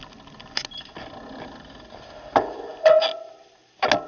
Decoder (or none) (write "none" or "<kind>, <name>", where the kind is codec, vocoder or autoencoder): none